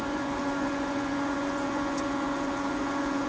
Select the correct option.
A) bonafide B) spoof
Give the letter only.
B